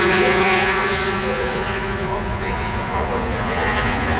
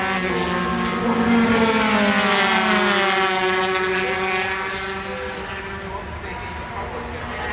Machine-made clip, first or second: first